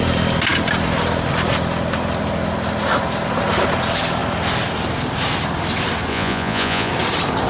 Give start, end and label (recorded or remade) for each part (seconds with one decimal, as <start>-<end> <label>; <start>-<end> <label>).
0.0-6.1 recorded; 6.1-6.9 remade; 6.9-7.5 recorded